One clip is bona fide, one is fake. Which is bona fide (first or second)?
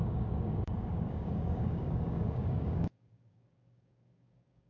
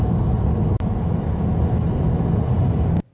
second